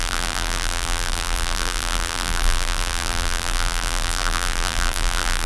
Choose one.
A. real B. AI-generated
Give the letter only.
B